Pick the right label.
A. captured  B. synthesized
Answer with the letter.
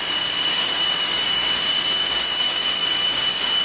B